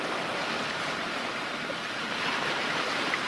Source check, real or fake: fake